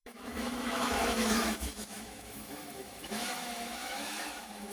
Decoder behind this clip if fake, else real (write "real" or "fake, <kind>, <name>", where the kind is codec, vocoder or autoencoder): fake, autoencoder, DAC-VAE